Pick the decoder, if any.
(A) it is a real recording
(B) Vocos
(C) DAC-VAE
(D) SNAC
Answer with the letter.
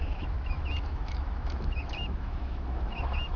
C